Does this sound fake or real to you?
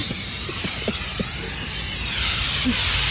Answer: fake